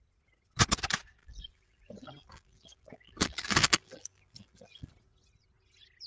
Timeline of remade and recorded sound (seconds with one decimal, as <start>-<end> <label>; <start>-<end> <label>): 0.0-1.2 recorded; 1.2-4.9 remade; 4.9-6.1 recorded